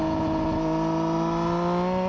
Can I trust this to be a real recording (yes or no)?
yes